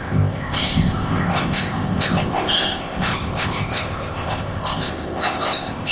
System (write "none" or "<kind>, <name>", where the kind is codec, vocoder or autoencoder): codec, ZipCodec